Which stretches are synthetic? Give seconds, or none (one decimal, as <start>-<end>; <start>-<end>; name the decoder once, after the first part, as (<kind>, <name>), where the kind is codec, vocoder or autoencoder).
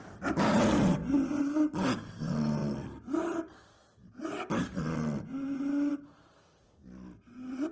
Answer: 0.0-1.0 (vocoder, BigVGAN v2); 2.1-2.6; 5.9-6.8